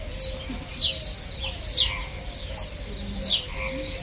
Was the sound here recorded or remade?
recorded